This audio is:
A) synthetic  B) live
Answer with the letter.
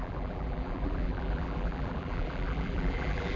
A